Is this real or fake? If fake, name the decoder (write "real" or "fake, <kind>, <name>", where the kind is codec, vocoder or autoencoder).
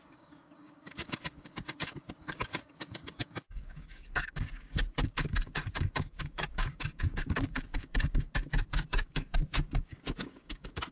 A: fake, codec, DAC